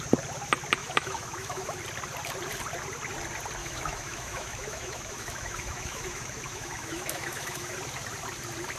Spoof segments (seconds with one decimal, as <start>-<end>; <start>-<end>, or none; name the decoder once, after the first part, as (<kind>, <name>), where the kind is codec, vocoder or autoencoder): 0.8-1.8 (autoencoder, DAC-VAE); 3.6-7.8